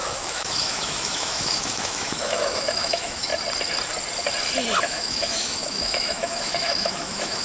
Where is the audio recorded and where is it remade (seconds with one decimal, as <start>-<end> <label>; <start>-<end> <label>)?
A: 0.0-3.3 remade; 3.3-4.8 recorded; 4.8-7.4 remade